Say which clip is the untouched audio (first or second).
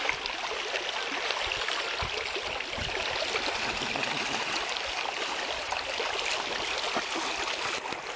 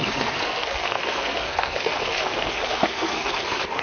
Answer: first